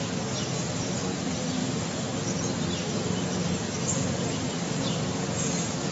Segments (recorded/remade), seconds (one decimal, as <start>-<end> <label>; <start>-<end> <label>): 0.0-5.9 recorded